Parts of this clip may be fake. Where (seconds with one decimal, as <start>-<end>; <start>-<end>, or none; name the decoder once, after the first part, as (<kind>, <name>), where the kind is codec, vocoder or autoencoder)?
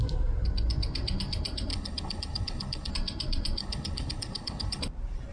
1.7-2.9 (codec, HILCodec); 3.6-4.8